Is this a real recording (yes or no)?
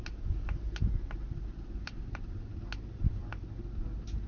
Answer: yes